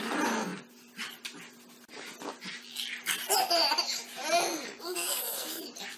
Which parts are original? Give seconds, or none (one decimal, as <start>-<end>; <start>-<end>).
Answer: 0.0-4.5; 5.6-6.0